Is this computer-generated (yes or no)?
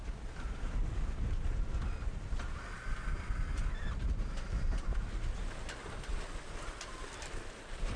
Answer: no